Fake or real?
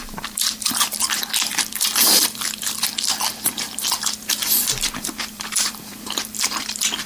fake